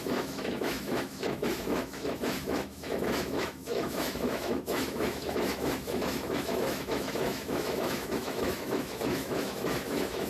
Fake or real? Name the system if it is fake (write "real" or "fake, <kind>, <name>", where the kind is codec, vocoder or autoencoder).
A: fake, autoencoder, DAC-VAE